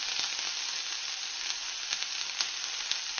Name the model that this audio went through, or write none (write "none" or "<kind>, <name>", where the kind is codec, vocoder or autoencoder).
none